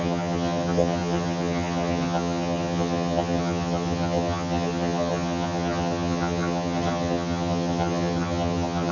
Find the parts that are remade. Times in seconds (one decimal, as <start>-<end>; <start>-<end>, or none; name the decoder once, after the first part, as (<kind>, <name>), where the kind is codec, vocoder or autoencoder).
0.0-8.9 (vocoder, HiFi-GAN)